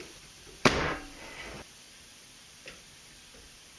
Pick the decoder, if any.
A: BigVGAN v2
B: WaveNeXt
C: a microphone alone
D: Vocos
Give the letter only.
A